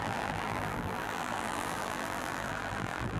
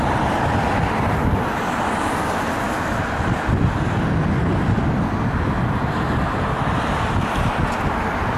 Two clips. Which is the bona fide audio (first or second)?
second